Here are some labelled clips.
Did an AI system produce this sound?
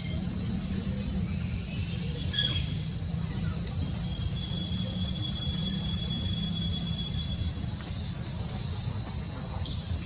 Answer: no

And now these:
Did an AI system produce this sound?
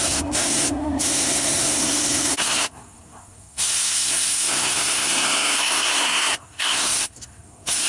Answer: yes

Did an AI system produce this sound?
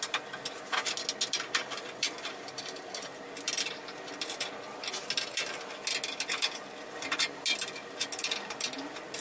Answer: no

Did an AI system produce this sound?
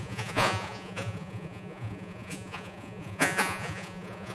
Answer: yes